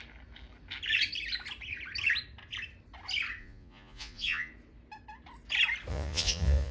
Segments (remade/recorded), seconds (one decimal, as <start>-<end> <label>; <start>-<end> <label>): 0.0-3.4 recorded; 3.4-4.5 remade; 4.5-5.9 recorded; 5.9-6.7 remade